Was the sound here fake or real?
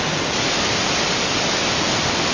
real